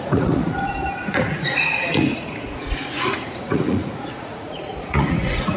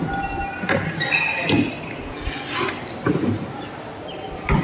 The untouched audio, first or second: second